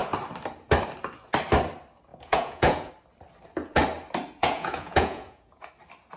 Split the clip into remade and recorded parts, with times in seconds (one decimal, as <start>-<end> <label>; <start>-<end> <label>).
0.0-2.1 recorded; 2.1-2.9 remade; 2.9-4.4 recorded; 4.4-5.7 remade; 5.7-6.2 recorded